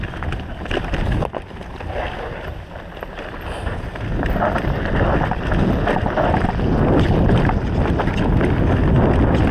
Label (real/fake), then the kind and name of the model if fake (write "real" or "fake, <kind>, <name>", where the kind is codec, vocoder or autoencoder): real